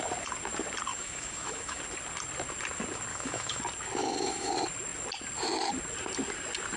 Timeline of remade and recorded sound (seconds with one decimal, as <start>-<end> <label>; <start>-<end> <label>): 0.0-0.9 recorded; 0.9-1.8 remade; 1.8-3.1 recorded; 3.1-3.6 remade; 3.6-4.0 recorded; 4.0-4.5 remade; 4.5-6.8 recorded